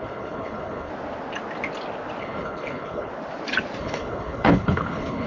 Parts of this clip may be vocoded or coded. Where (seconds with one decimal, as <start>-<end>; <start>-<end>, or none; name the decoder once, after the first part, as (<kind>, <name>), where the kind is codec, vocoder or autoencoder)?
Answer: 0.0-0.9 (codec, HILCodec); 2.2-3.1; 3.8-5.3